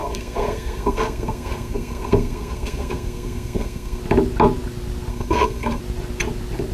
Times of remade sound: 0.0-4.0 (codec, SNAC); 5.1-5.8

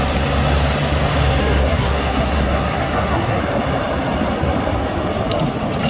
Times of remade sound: 1.4-3.4 (codec, SNAC)

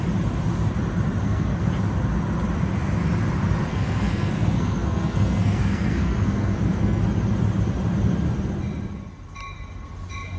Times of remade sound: 1.2-1.7 (codec, SNAC); 3.7-7.0